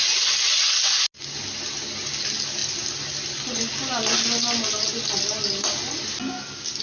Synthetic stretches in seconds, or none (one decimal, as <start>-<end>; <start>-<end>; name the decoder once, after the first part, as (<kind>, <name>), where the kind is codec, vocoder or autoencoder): none